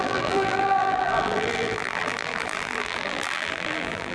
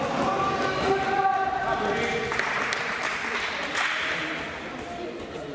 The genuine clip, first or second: second